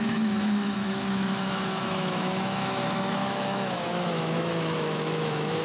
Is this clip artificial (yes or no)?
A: yes